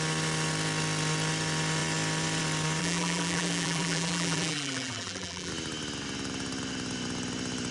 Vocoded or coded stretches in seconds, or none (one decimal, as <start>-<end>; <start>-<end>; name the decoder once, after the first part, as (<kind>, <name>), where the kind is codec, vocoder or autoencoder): 2.8-5.5 (vocoder, BigVGAN v2)